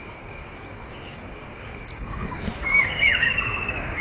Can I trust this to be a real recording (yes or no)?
no